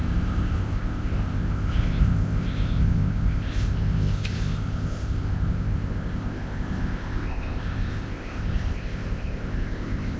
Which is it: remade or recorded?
remade